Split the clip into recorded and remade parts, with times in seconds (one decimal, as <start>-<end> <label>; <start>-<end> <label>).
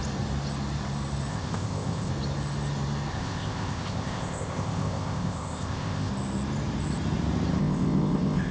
0.0-1.3 recorded; 1.3-2.1 remade; 2.1-3.1 recorded; 3.1-6.1 remade; 6.1-7.6 recorded; 7.6-8.5 remade